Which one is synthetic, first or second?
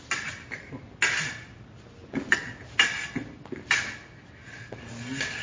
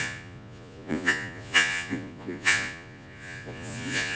second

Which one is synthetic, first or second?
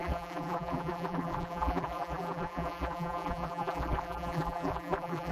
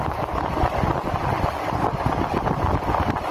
first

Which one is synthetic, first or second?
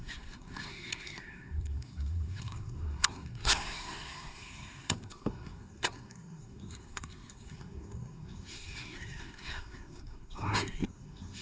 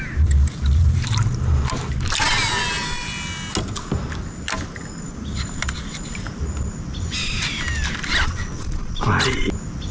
first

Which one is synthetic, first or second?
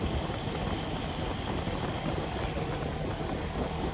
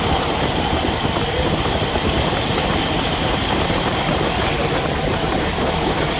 second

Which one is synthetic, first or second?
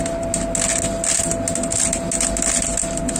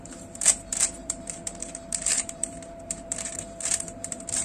second